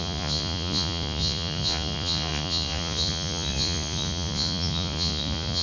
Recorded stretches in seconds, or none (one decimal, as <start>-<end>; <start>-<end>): none